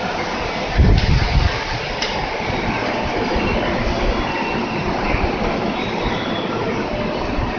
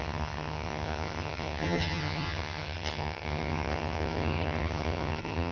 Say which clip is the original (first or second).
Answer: first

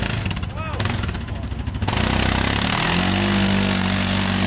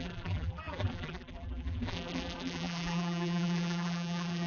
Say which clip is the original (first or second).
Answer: first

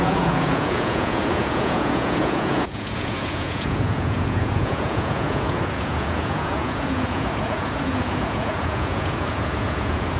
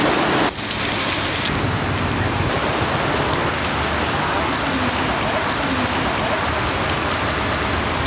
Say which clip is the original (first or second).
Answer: second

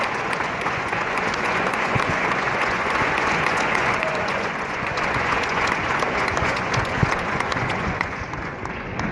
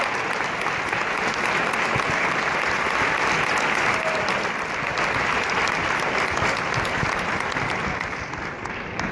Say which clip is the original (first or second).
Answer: second